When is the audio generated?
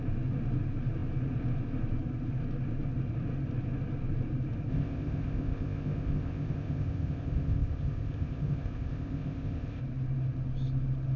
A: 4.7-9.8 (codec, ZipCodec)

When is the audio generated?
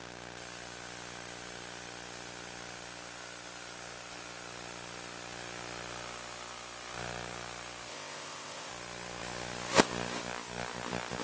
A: 7.9-8.7 (codec, ZipCodec)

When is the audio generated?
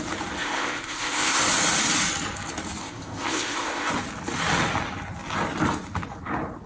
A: 0.4-1.4 (codec, ZipCodec); 2.8-3.9